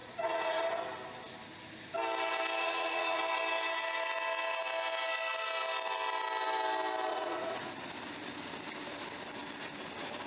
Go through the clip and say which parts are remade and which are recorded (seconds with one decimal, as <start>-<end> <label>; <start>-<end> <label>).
0.0-0.6 remade; 0.6-2.6 recorded; 2.6-3.2 remade; 3.2-7.1 recorded; 7.1-7.9 remade; 7.9-10.3 recorded